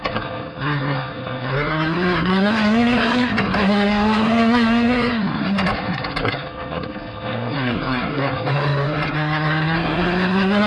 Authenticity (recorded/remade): remade